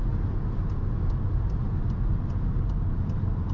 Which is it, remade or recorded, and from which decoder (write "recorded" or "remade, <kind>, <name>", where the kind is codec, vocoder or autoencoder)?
recorded